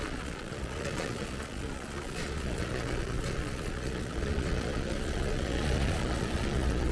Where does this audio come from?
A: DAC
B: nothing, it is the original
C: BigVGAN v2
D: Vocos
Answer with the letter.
D